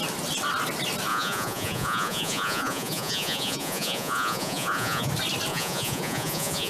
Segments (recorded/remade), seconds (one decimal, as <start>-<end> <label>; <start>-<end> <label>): 0.0-1.1 recorded; 1.1-5.1 remade; 5.1-5.5 recorded; 5.5-6.7 remade